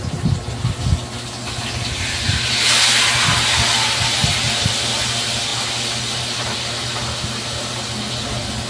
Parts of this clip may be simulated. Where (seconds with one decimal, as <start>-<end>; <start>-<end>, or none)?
none